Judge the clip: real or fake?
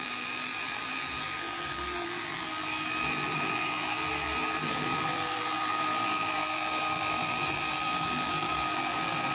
fake